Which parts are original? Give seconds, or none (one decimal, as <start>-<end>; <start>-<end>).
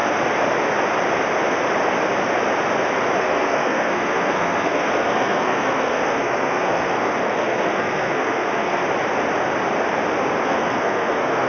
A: 0.0-3.2; 8.8-10.4